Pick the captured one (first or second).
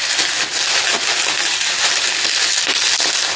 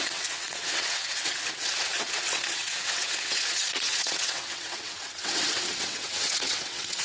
first